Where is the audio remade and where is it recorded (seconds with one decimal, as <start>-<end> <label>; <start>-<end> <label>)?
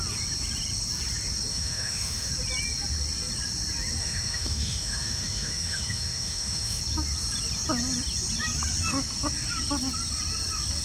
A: 0.0-1.5 recorded; 1.5-2.3 remade; 2.3-4.0 recorded; 4.0-6.8 remade; 6.8-10.8 recorded